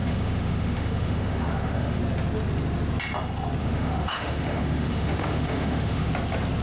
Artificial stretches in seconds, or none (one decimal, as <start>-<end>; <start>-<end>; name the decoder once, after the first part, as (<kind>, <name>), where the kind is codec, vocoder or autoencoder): 0.0-2.0 (autoencoder, DAC-VAE); 3.6-6.1